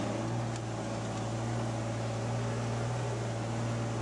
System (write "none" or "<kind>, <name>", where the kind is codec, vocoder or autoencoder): none